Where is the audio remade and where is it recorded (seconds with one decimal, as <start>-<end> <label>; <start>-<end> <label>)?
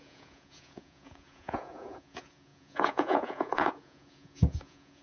0.0-5.0 remade